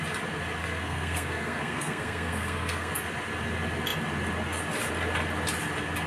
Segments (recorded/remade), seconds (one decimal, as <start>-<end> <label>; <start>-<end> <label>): 0.0-0.6 recorded; 0.6-2.9 remade; 2.9-6.1 recorded